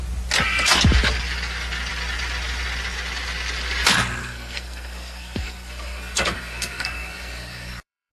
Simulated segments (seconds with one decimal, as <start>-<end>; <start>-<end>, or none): 4.2-8.1